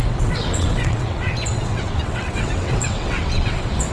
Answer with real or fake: fake